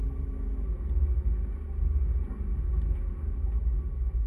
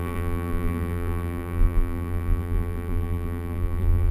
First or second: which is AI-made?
second